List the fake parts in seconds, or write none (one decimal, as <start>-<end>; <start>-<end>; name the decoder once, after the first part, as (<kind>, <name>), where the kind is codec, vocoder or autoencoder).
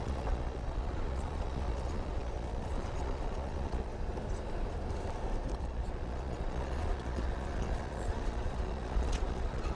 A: 0.0-3.9 (vocoder, Vocos); 5.6-9.8